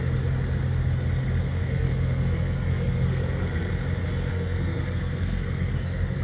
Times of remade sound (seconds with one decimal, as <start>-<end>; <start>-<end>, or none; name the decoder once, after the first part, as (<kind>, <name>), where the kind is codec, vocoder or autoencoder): 1.5-3.7 (codec, SNAC); 4.3-5.7